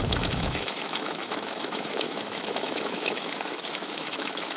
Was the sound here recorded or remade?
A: remade